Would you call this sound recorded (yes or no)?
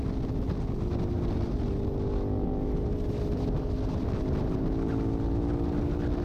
yes